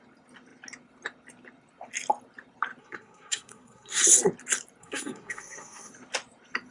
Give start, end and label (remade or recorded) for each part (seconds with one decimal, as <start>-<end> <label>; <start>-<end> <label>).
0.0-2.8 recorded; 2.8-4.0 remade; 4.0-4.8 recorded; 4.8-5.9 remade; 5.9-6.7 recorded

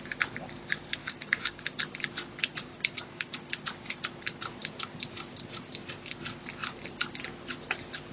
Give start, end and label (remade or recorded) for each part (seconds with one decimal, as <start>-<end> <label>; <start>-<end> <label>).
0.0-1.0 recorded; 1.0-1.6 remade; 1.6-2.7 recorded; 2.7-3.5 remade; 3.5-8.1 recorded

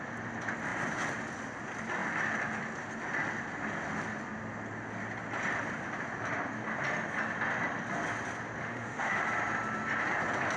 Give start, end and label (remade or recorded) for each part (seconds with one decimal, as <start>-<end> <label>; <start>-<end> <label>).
0.0-8.6 recorded; 8.6-9.2 remade; 9.2-10.6 recorded

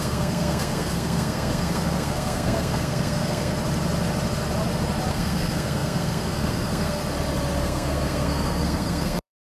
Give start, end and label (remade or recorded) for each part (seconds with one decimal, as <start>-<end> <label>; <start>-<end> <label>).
0.0-3.5 remade; 3.5-5.1 recorded; 5.1-7.0 remade; 7.0-7.6 recorded; 7.6-9.5 remade